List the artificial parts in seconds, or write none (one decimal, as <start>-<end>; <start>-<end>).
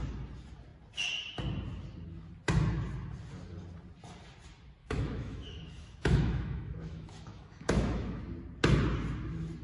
4.8-8.2